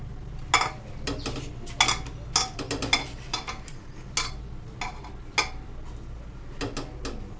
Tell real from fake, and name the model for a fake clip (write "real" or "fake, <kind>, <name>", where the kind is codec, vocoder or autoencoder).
real